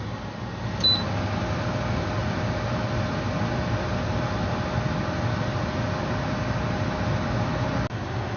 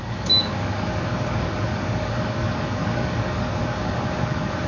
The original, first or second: first